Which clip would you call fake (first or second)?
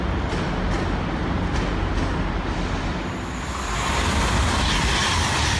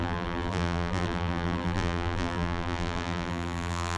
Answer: second